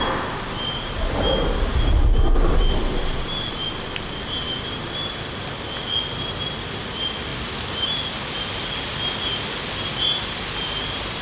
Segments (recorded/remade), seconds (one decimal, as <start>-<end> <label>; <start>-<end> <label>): 0.0-11.2 recorded